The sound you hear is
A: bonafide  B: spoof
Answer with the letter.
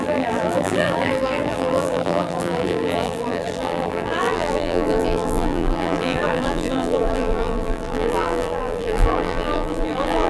B